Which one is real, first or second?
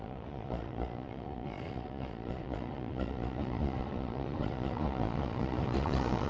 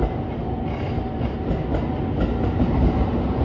second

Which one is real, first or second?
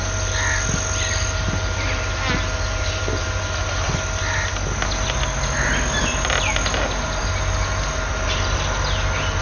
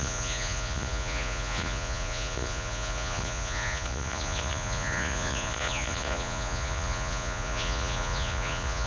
first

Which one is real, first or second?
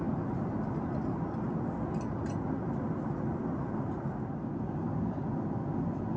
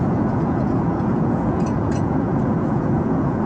first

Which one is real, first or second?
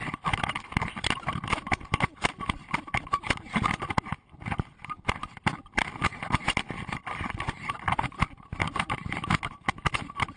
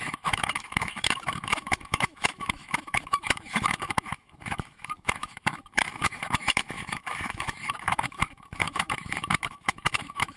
first